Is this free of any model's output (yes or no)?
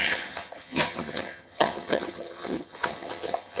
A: no